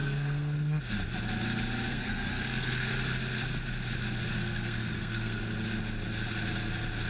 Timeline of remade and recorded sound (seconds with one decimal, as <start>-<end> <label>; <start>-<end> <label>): 0.0-0.8 remade; 0.8-1.9 recorded; 1.9-2.9 remade; 2.9-4.3 recorded; 4.3-5.4 remade; 5.4-7.1 recorded